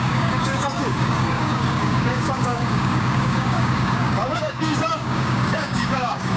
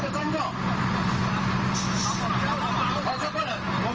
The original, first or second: second